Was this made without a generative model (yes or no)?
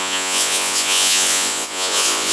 no